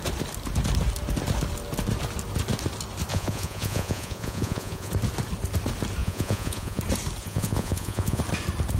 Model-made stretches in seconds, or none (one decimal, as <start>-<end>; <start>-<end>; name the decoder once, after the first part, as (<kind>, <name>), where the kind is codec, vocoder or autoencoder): 3.1-4.9 (vocoder, Vocos); 6.0-6.8; 7.2-8.2